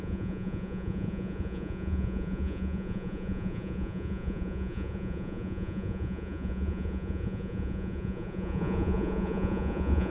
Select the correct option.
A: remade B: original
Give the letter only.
A